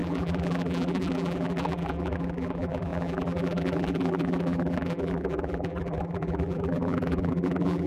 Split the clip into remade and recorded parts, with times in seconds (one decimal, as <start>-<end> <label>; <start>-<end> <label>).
0.0-7.9 remade